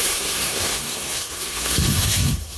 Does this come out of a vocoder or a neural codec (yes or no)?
yes